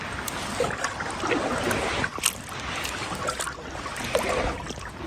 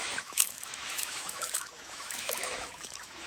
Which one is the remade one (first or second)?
second